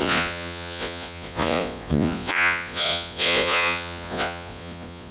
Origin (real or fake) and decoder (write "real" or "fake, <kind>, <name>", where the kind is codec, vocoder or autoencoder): fake, vocoder, Vocos